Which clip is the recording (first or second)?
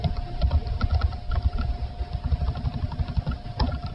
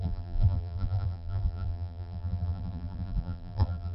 first